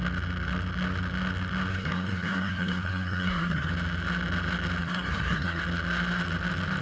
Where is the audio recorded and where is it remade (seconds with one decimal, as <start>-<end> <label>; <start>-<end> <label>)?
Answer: 0.0-1.7 recorded; 1.7-3.7 remade; 3.7-4.8 recorded; 4.8-5.6 remade; 5.6-6.8 recorded